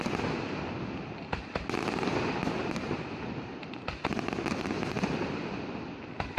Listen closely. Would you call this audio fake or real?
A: real